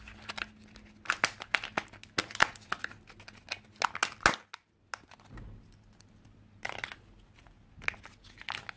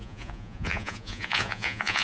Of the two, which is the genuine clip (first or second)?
first